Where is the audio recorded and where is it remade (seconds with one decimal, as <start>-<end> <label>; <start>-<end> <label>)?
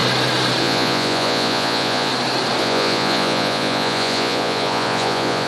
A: 0.0-0.6 recorded; 0.6-2.1 remade; 2.1-2.6 recorded; 2.6-5.5 remade